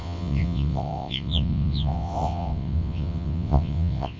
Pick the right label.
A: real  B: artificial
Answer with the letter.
B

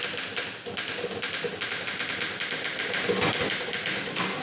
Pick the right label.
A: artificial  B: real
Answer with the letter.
B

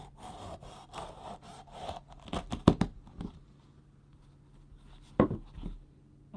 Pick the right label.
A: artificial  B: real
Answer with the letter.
B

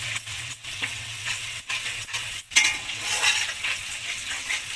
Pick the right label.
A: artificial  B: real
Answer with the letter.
A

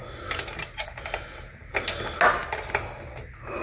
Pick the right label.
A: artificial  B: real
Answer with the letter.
B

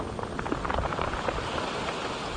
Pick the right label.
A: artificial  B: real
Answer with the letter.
B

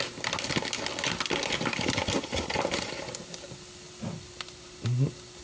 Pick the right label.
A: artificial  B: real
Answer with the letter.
B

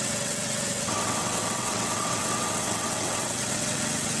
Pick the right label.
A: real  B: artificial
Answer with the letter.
B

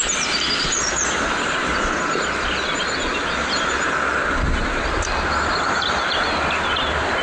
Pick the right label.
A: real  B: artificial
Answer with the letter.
A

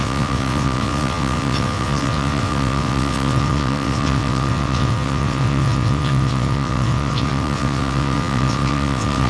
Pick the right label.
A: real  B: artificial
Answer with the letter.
B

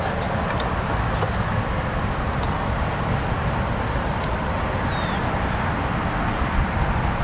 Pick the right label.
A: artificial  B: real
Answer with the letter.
B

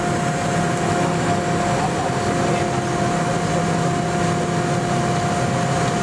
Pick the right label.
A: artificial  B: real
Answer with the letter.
B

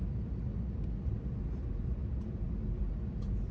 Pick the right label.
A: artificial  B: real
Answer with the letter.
B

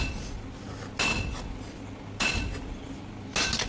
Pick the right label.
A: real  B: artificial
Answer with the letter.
A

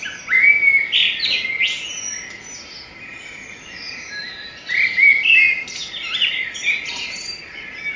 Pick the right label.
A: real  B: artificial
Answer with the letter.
A